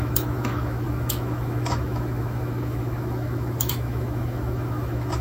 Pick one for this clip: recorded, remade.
remade